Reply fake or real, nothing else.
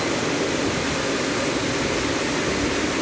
real